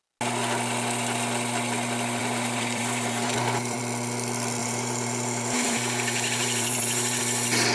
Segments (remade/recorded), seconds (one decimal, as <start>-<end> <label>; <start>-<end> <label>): 0.0-2.2 recorded; 2.2-3.8 remade; 3.8-4.6 recorded; 4.6-7.2 remade; 7.2-7.7 recorded